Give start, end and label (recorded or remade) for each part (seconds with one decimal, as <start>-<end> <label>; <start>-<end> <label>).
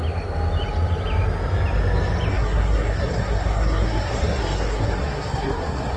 0.0-2.3 recorded; 2.3-6.0 remade